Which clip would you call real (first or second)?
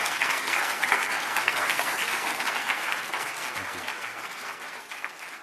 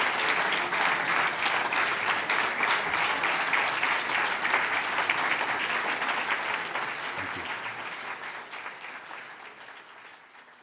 second